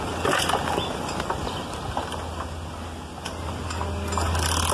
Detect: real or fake real